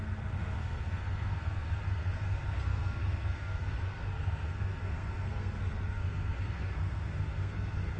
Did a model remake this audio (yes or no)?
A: yes